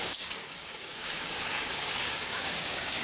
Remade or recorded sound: remade